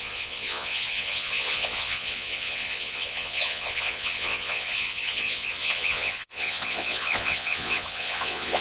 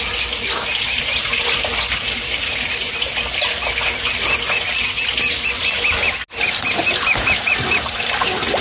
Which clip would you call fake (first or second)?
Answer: first